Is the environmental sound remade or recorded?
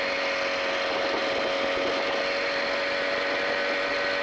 recorded